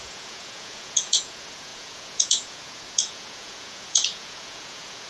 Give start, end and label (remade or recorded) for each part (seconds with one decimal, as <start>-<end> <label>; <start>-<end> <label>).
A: 0.0-5.1 remade